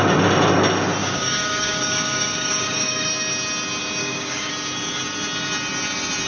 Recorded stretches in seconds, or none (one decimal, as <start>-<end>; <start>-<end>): 0.0-1.0; 3.1-4.0; 4.5-6.3